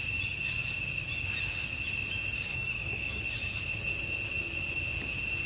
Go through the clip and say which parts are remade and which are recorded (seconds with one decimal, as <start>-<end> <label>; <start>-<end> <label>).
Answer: 0.0-2.5 recorded; 2.5-3.2 remade; 3.2-5.5 recorded